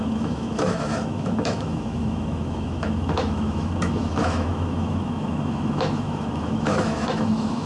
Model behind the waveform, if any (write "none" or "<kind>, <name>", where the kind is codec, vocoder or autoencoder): autoencoder, DAC-VAE